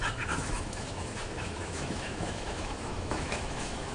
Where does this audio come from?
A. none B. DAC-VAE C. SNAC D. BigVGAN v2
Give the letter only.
B